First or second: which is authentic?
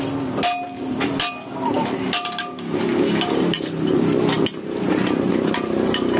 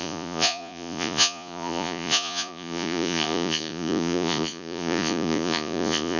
first